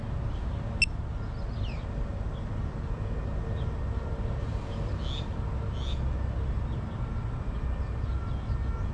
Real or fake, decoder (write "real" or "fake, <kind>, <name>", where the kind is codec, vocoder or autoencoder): real